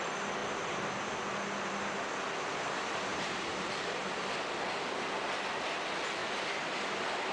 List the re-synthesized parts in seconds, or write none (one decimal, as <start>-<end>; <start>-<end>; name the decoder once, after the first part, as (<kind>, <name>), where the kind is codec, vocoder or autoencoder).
3.1-4.4 (vocoder, BigVGAN v2); 6.2-6.7